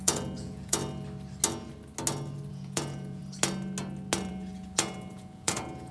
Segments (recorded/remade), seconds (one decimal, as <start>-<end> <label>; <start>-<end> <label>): 0.0-0.8 remade; 0.8-2.5 recorded; 2.5-3.2 remade; 3.2-4.3 recorded; 4.3-5.9 remade